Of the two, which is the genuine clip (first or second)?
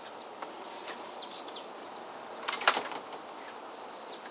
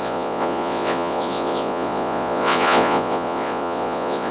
first